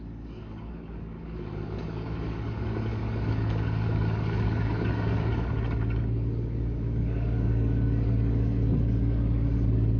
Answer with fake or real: fake